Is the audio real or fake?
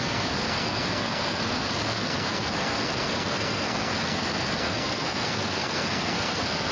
fake